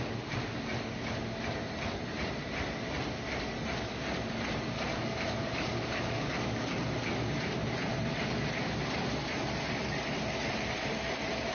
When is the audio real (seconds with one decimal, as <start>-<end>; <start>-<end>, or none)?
0.0-4.9; 6.8-11.5